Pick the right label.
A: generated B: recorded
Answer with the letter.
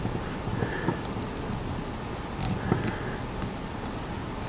B